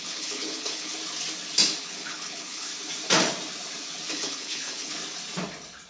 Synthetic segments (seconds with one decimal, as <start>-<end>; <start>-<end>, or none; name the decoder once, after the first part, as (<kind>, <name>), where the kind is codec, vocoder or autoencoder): 0.0-0.9 (codec, HILCodec); 1.8-2.7; 4.1-5.0